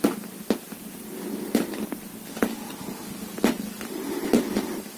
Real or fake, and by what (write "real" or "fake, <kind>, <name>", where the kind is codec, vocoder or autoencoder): real